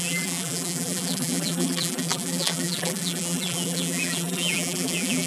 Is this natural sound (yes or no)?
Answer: no